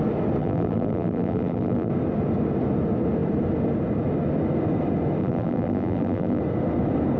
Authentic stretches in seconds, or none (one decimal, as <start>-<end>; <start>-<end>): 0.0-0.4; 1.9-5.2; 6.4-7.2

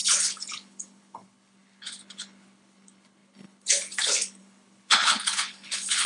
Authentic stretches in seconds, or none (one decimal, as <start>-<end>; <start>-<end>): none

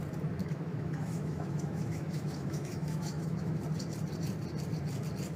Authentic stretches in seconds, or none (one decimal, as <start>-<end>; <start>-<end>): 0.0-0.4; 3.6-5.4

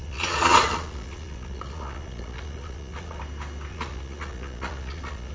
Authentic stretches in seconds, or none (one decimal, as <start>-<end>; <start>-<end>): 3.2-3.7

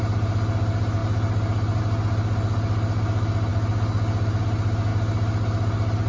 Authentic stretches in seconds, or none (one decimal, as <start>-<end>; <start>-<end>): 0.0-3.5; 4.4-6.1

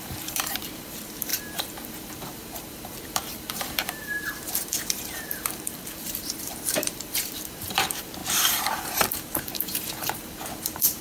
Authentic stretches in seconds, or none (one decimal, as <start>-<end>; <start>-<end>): none

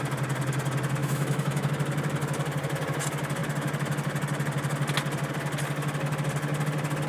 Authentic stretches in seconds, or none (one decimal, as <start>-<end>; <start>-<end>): 0.0-1.0; 1.7-7.1